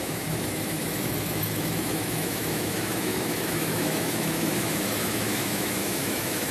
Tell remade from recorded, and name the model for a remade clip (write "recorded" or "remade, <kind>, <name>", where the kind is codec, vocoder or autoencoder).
remade, autoencoder, DAC-VAE